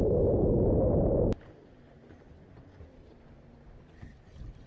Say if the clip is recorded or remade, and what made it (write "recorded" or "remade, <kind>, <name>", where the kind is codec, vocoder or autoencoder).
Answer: recorded